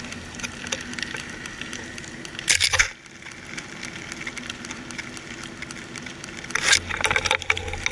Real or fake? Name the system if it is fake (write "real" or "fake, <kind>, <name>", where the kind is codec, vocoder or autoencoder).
real